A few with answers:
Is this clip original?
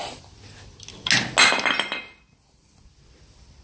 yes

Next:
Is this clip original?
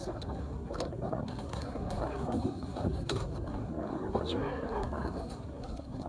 no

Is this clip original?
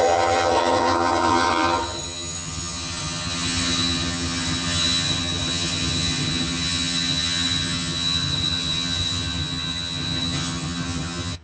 no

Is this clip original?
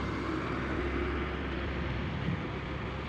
yes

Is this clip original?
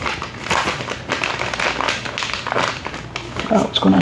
yes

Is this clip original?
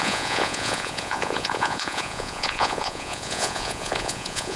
no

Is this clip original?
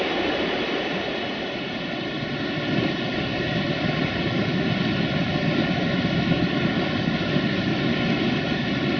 no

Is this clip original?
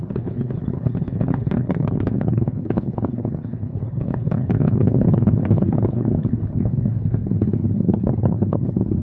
no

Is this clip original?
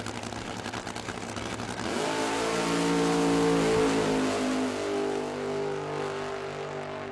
yes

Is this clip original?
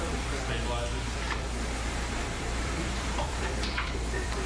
no